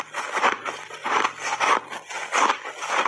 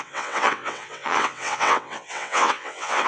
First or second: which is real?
first